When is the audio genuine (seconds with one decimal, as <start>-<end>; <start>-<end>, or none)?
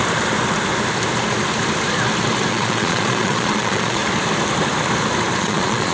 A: 0.0-2.5; 4.0-5.4